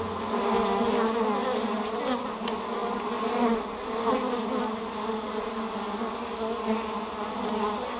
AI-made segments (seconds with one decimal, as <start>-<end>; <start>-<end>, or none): none